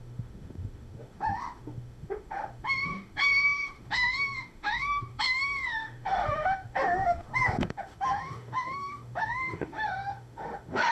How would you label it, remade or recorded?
remade